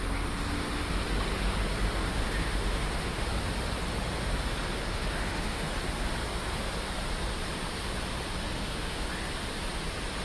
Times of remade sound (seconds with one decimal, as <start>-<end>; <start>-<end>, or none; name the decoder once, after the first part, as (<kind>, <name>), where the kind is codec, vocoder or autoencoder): 2.1-3.2 (autoencoder, DAC-VAE); 4.9-5.7; 8.5-9.1